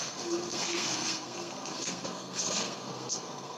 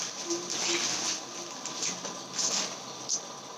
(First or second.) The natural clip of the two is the second